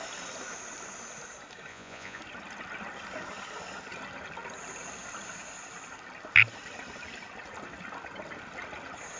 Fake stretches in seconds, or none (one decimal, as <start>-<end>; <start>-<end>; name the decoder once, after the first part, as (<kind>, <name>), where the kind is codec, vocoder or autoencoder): 1.7-2.2 (vocoder, Vocos)